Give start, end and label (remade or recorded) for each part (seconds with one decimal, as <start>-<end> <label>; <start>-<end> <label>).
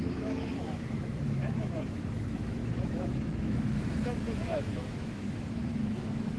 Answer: 0.0-6.4 remade